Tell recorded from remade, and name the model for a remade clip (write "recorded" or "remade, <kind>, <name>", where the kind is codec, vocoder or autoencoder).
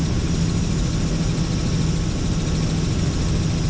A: recorded